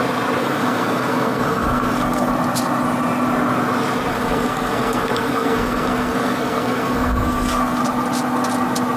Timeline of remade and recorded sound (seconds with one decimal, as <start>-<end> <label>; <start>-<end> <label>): 0.0-0.4 recorded; 0.4-2.3 remade; 2.3-4.1 recorded; 4.1-7.8 remade; 7.8-9.0 recorded